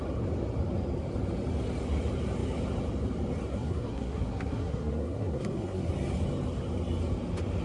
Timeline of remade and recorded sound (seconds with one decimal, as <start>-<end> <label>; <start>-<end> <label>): 0.0-3.5 recorded; 3.5-5.9 remade; 5.9-7.6 recorded